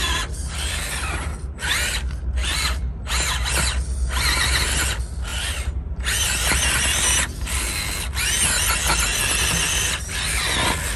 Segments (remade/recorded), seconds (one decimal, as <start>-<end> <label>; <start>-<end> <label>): 0.0-1.4 recorded; 1.4-2.2 remade; 2.2-5.3 recorded; 5.3-7.5 remade; 7.5-11.0 recorded